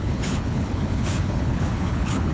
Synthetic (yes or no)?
yes